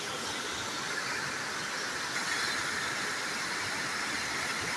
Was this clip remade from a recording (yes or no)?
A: no